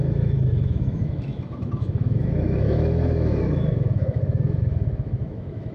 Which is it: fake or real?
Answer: fake